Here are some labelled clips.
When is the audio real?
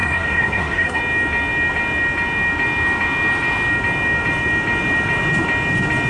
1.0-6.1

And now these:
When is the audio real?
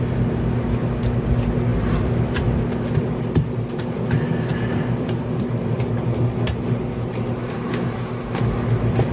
0.0-1.7; 2.6-4.5; 8.2-9.1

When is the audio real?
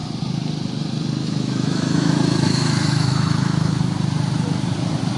0.0-1.2; 3.8-5.2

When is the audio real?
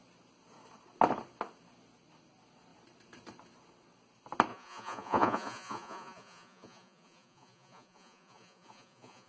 0.0-4.5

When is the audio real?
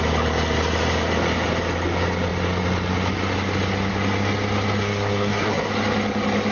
0.0-4.8; 5.7-6.5